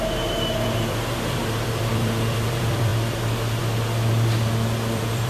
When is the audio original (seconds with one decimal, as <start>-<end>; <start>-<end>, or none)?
none